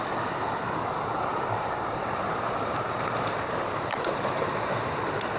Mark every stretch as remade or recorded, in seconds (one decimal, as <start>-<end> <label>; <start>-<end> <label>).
0.0-1.3 recorded; 1.3-4.5 remade; 4.5-5.4 recorded